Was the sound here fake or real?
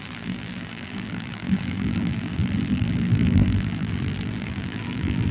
fake